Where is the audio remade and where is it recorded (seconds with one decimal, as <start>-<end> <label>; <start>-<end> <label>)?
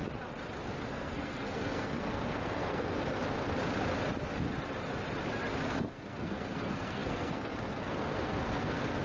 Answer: 0.0-0.9 recorded; 0.9-3.2 remade; 3.2-5.7 recorded; 5.7-9.0 remade